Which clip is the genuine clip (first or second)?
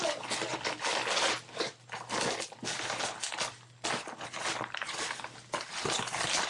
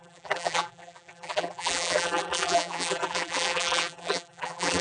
first